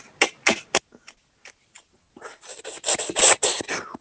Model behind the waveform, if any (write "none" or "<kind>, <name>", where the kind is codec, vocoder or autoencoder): none